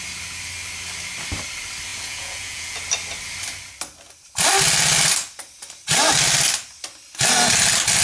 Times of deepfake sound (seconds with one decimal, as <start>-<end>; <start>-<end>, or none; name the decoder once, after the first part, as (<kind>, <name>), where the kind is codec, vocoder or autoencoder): 1.9-2.8 (vocoder, Vocos)